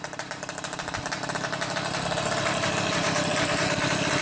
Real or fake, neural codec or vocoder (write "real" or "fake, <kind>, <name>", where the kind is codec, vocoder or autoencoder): real